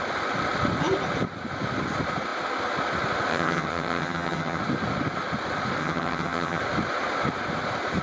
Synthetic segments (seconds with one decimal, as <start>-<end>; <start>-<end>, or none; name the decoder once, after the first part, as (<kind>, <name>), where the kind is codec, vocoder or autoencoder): 3.3-4.6 (vocoder, HiFi-GAN); 5.8-6.6